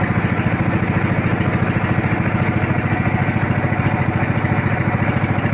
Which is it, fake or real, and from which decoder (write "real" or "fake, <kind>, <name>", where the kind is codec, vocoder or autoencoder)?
real